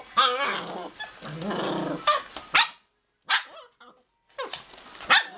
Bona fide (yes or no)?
yes